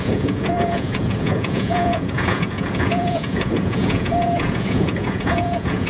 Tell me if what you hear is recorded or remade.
remade